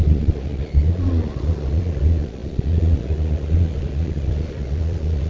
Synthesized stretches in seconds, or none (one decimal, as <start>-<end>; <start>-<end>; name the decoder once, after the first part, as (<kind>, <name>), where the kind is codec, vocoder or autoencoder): 0.0-5.3 (vocoder, Vocos)